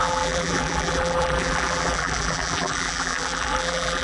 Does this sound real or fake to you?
fake